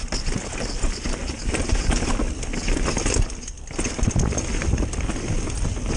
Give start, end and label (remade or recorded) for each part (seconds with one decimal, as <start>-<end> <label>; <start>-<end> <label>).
0.0-1.2 recorded; 1.2-2.1 remade; 2.1-6.0 recorded